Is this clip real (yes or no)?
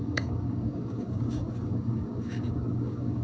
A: no